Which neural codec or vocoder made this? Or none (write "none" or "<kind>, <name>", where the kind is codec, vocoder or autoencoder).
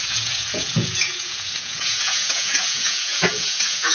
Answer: vocoder, Vocos